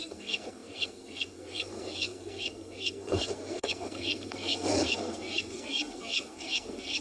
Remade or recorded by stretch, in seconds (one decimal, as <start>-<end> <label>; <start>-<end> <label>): 0.0-7.0 remade